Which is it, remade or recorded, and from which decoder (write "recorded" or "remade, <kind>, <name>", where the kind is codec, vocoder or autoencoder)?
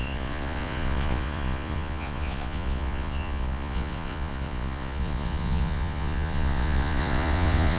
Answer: remade, vocoder, Vocos